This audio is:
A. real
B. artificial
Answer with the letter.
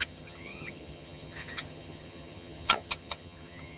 B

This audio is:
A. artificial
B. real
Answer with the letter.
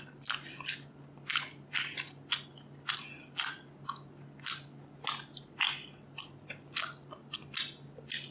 B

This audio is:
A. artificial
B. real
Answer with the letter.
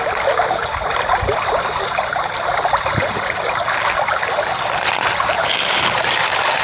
B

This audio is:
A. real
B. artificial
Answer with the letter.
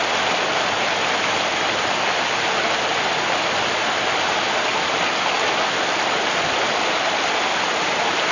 A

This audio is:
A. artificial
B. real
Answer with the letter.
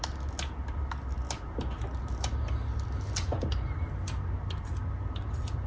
B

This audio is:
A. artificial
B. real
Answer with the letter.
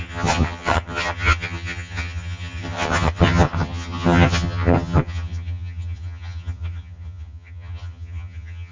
A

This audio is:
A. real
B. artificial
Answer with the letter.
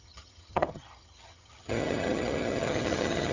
B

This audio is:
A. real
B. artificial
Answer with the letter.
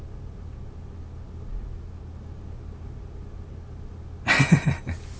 A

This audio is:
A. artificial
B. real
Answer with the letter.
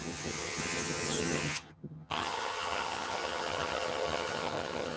A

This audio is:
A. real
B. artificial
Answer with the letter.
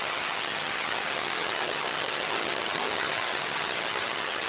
B